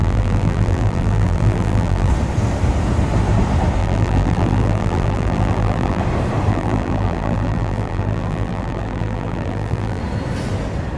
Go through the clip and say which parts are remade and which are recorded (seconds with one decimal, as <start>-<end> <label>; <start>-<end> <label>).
0.0-2.1 remade; 2.1-3.8 recorded; 3.8-6.0 remade; 6.0-6.5 recorded; 6.5-10.0 remade; 10.0-11.0 recorded